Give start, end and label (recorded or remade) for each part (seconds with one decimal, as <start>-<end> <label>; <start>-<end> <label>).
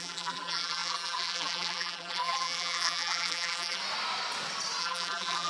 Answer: 0.0-3.8 remade; 3.8-4.8 recorded; 4.8-5.5 remade